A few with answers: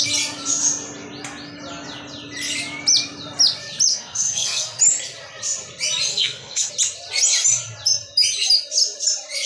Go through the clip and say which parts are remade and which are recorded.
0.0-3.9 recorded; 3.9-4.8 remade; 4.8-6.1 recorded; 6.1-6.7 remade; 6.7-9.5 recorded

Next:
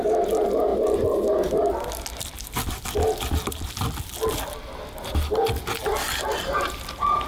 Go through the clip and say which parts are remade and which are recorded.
0.0-7.3 recorded

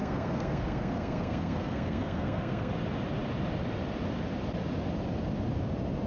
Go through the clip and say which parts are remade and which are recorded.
0.0-2.7 remade; 2.7-6.1 recorded

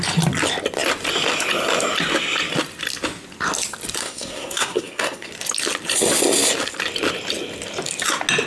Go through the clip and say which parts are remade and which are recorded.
0.0-4.0 recorded; 4.0-5.3 remade; 5.3-8.5 recorded

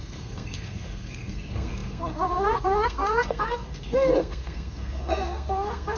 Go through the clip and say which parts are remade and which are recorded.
0.0-6.0 remade

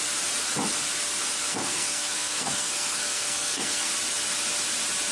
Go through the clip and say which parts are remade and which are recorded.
0.0-1.5 recorded; 1.5-3.9 remade; 3.9-5.1 recorded